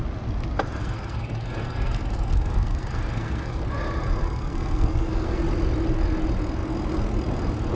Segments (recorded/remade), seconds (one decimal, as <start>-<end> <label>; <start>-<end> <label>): 0.0-0.8 recorded; 0.8-3.6 remade; 3.6-4.2 recorded; 4.2-5.4 remade; 5.4-7.8 recorded